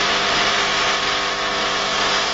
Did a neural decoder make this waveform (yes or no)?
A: no